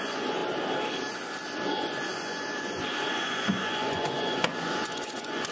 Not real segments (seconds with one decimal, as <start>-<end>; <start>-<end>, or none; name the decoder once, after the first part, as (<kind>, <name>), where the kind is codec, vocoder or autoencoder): 0.0-0.4 (vocoder, Vocos); 1.7-5.5